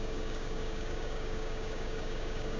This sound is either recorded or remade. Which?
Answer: remade